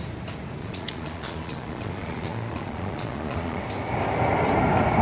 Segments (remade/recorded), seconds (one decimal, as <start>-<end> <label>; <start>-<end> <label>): 0.0-0.6 recorded; 0.6-3.6 remade; 3.6-5.0 recorded